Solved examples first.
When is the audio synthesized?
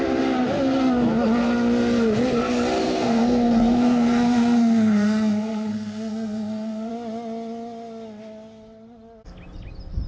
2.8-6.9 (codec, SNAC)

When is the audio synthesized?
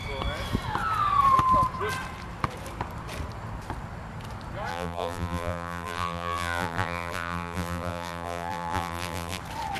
4.7-9.4 (vocoder, BigVGAN v2)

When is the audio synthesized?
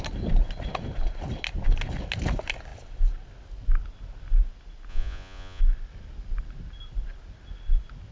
4.9-5.6 (vocoder, Vocos)